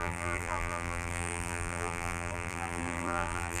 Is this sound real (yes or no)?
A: no